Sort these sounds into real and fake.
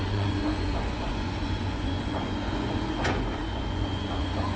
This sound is fake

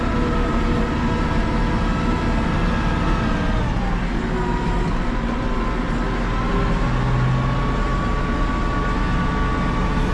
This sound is real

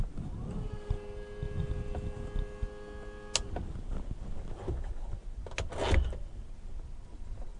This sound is real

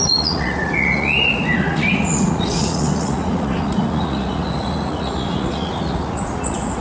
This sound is fake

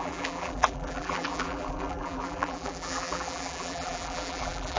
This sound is fake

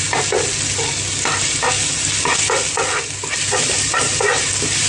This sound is real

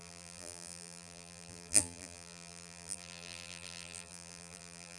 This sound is fake